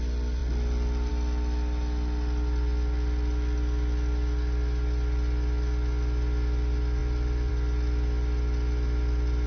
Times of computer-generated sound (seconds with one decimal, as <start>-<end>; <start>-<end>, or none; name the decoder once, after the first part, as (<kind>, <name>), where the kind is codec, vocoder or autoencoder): none